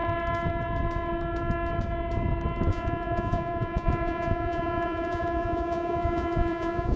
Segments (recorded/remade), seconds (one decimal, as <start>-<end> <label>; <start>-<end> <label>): 0.0-2.7 recorded; 2.7-7.0 remade